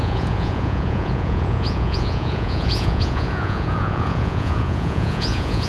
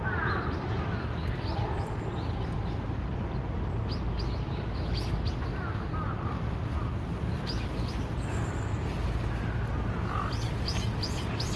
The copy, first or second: first